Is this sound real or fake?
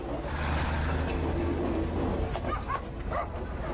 real